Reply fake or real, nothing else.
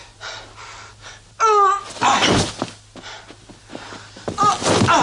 real